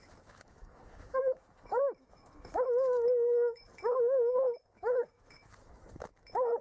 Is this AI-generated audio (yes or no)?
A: yes